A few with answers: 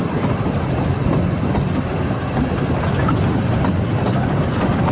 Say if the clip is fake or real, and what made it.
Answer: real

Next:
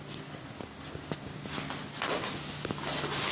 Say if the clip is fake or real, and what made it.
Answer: real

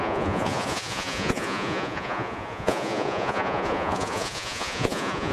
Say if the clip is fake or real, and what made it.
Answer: fake, vocoder, Vocos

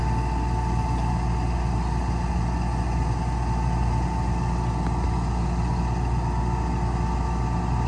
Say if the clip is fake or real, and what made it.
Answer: real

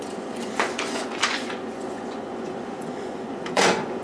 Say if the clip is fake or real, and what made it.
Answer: fake, vocoder, Vocos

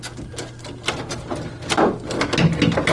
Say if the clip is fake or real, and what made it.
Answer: real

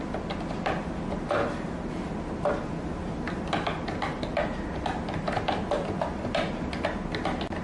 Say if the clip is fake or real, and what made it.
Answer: real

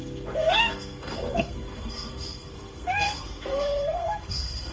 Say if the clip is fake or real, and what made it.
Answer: fake, codec, SNAC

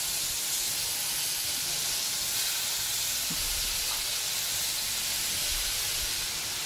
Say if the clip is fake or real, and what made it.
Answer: real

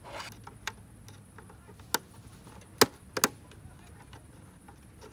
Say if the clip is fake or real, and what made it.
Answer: real